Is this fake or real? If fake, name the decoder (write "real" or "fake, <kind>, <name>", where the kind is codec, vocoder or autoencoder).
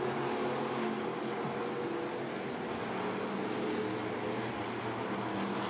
real